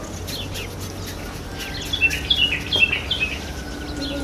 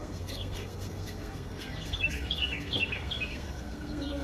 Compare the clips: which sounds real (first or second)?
first